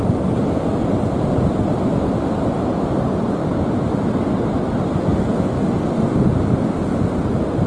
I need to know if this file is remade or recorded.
recorded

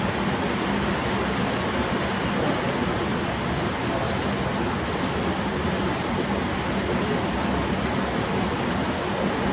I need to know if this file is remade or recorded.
recorded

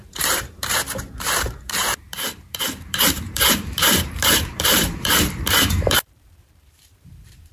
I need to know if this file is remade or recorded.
remade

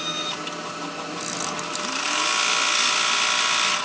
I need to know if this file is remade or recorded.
recorded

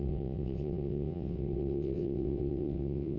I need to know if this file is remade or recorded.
remade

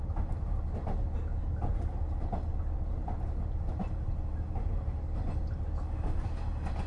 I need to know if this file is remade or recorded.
recorded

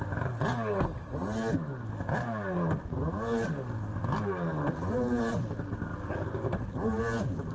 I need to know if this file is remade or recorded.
recorded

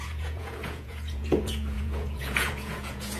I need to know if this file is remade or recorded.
remade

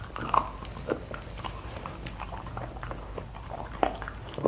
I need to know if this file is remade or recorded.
recorded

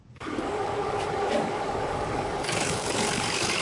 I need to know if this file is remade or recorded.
remade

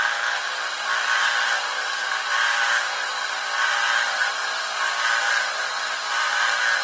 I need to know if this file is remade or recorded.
remade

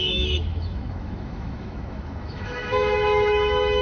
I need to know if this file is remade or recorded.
remade